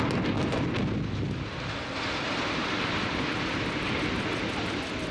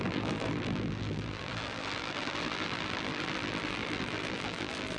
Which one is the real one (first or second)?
first